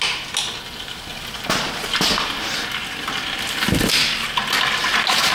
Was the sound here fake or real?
real